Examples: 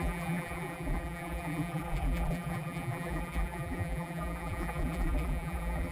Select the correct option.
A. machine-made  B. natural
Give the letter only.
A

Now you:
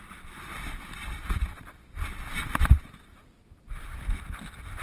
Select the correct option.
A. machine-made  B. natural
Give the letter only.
B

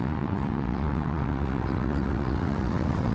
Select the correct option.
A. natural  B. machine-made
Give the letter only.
B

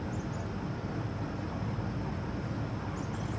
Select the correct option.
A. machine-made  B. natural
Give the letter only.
B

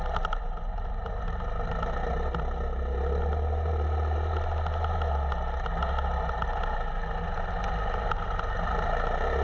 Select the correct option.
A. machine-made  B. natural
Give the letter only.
B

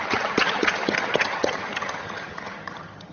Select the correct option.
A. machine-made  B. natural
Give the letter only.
A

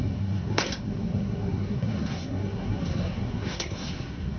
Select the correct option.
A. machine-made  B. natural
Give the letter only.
A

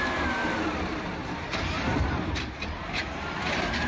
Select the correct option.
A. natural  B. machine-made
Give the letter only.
B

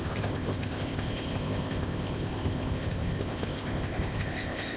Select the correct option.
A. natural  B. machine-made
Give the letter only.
B